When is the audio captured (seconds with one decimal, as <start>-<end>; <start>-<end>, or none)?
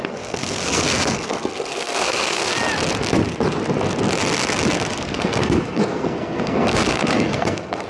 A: 2.5-4.9